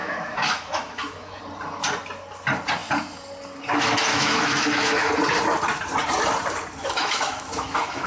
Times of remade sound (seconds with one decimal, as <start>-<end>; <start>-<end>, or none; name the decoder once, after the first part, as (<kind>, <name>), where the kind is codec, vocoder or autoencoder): 0.0-1.4 (autoencoder, DAC-VAE); 4.1-5.1; 6.8-8.1